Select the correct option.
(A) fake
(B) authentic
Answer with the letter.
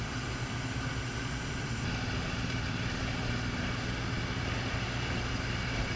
B